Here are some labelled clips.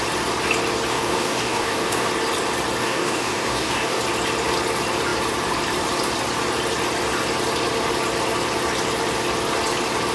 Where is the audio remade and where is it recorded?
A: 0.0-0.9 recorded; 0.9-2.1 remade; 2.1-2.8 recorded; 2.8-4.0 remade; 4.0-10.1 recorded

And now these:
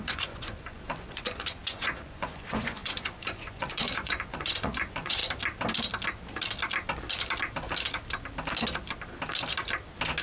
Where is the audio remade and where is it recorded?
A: 0.0-5.2 remade; 5.2-10.2 recorded